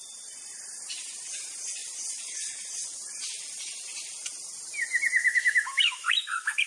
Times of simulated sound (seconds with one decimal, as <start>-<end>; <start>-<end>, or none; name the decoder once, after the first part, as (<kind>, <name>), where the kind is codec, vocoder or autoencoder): 5.2-6.7 (autoencoder, DAC-VAE)